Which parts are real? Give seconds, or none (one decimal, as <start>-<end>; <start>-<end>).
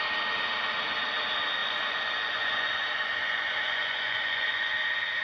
0.0-1.6; 4.7-5.2